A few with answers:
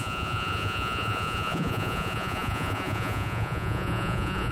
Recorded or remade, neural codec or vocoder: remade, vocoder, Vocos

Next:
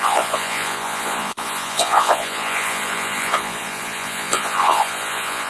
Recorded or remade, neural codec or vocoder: remade, vocoder, Vocos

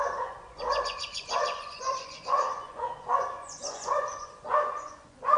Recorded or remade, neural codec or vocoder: remade, vocoder, Vocos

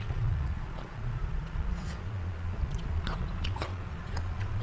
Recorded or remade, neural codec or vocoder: remade, vocoder, Vocos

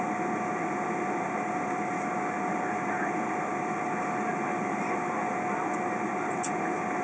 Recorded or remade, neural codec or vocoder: recorded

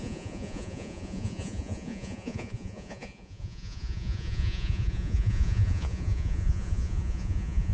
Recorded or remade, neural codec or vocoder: remade, vocoder, Vocos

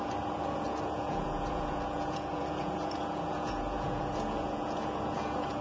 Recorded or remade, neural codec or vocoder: remade, vocoder, Vocos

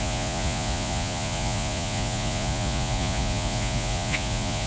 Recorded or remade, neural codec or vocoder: remade, vocoder, Vocos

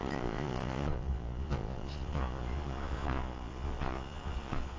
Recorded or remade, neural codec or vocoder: remade, vocoder, Vocos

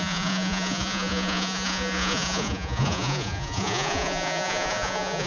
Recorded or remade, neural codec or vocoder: remade, vocoder, Vocos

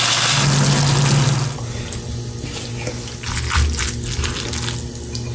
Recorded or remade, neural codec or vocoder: recorded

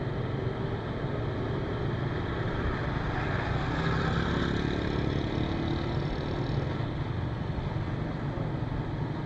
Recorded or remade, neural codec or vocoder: recorded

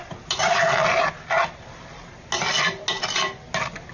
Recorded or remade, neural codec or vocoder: recorded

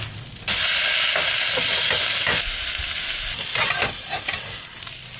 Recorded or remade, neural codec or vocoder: recorded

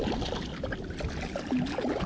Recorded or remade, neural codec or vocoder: recorded